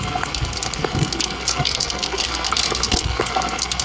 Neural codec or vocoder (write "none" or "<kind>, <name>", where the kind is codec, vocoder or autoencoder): codec, SNAC